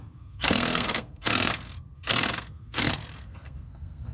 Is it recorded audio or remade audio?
remade